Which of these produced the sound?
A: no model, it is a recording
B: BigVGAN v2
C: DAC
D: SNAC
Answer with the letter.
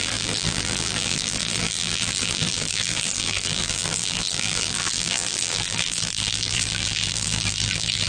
B